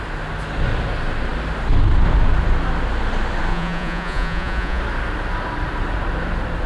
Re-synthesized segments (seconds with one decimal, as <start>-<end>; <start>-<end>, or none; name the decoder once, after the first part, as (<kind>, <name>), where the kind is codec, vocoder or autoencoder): 3.5-4.8 (vocoder, Vocos)